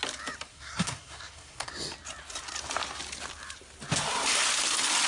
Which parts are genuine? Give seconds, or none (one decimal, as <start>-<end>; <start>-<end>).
0.0-0.5; 1.7-5.1